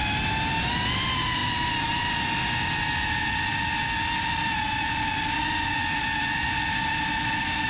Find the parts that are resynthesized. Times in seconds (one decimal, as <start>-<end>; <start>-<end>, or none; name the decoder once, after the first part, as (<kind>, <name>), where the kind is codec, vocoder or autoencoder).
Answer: none